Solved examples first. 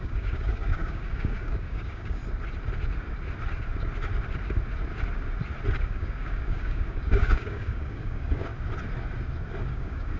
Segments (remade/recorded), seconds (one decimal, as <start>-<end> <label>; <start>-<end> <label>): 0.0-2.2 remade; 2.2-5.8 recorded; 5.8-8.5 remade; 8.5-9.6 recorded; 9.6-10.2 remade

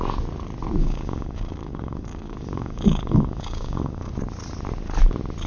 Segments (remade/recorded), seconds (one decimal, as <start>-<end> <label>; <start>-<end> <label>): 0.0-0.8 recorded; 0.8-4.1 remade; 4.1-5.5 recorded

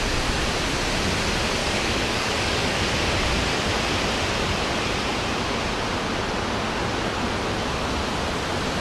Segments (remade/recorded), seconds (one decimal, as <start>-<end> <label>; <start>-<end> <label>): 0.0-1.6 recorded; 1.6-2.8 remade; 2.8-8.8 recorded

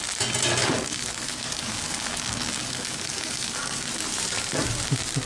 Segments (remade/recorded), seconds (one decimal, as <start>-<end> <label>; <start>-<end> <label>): 0.0-0.6 recorded; 0.6-3.8 remade; 3.8-5.3 recorded